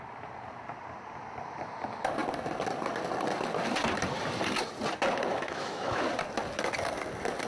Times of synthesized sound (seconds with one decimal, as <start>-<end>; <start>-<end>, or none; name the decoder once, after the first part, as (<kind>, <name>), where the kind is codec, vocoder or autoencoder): 5.3-6.0 (autoencoder, DAC-VAE)